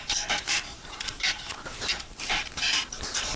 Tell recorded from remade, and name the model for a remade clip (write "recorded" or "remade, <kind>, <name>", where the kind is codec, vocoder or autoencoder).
remade, vocoder, BigVGAN v2